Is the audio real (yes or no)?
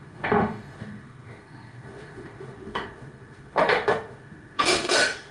no